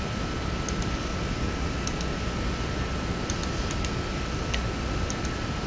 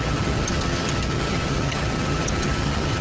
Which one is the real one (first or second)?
first